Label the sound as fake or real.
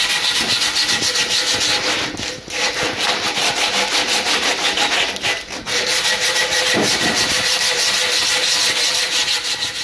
real